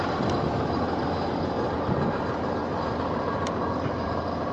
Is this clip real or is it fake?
real